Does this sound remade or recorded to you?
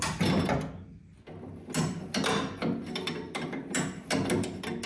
recorded